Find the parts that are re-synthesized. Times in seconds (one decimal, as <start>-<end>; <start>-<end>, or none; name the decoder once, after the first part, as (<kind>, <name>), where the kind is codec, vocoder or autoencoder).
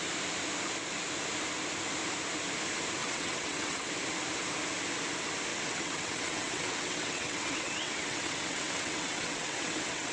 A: 3.0-3.9 (vocoder, WaveNeXt); 5.5-10.1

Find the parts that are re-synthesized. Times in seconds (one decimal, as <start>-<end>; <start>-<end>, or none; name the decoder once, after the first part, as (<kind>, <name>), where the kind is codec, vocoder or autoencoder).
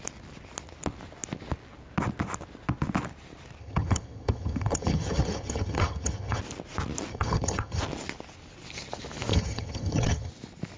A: 3.6-6.4 (vocoder, HiFi-GAN); 7.1-7.8; 9.3-10.3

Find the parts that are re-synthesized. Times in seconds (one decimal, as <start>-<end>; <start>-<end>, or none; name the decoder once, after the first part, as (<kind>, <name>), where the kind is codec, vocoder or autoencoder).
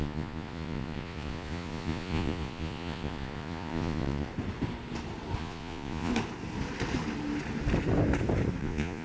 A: 0.0-4.3 (vocoder, Vocos); 5.4-6.1; 8.6-9.0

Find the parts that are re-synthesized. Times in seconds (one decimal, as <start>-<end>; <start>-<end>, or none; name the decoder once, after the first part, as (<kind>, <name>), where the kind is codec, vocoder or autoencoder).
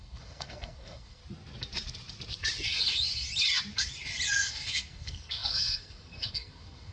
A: 0.0-1.2 (codec, SNAC); 4.5-6.9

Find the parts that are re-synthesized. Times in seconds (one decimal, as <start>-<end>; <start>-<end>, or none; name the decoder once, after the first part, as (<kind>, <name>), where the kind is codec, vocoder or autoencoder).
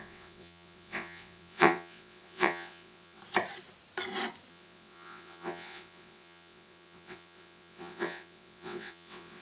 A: 0.0-3.2 (vocoder, WaveNeXt); 4.5-9.4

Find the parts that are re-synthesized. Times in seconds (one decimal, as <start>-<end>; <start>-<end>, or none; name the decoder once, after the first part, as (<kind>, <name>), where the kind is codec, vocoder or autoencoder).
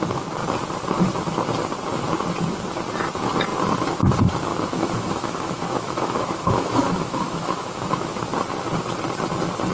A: 4.5-8.2 (autoencoder, DAC-VAE)